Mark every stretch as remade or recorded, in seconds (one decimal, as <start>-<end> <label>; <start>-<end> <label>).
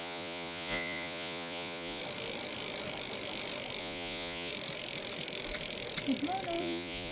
0.0-2.0 remade; 2.0-3.8 recorded; 3.8-4.5 remade; 4.5-6.6 recorded; 6.6-7.1 remade